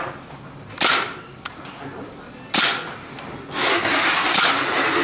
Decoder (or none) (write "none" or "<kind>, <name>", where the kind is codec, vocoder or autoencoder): none